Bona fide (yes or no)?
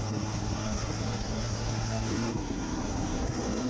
no